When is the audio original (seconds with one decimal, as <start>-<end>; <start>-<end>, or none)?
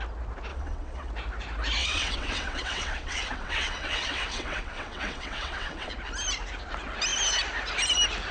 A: 0.0-0.5; 1.1-1.8; 5.9-8.3